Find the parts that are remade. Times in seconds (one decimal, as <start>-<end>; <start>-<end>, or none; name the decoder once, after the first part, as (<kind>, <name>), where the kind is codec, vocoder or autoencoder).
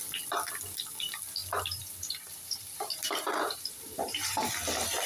1.4-4.5 (vocoder, BigVGAN v2)